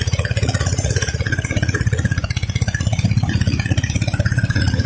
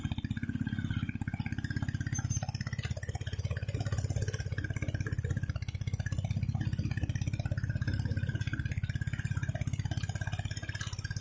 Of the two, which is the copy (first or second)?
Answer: first